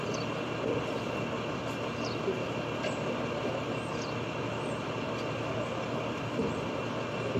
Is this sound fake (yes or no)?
no